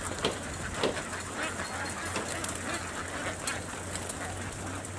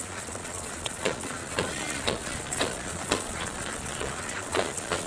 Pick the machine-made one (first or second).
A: second